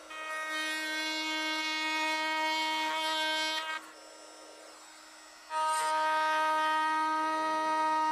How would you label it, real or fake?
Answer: real